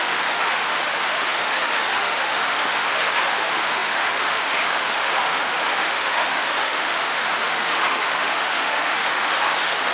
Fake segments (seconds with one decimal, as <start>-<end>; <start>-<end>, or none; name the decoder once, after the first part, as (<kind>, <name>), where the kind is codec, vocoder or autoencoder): 0.0-9.9 (autoencoder, DAC-VAE)